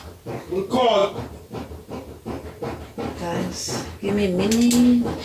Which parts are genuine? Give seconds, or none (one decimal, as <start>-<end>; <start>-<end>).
0.0-1.0; 4.1-5.2